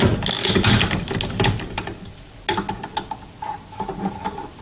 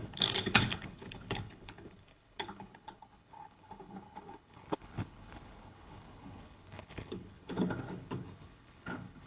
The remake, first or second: second